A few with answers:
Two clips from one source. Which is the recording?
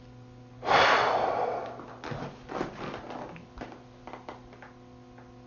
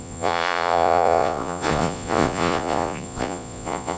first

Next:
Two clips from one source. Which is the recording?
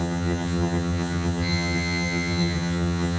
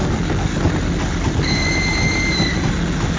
second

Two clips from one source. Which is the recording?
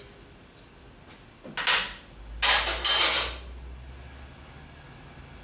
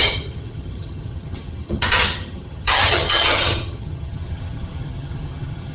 first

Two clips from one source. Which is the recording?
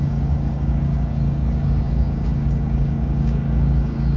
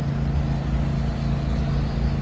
second